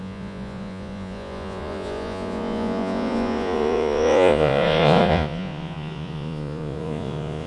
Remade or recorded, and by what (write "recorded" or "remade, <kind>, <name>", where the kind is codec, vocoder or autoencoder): remade, vocoder, Vocos